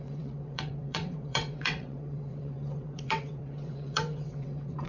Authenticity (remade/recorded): remade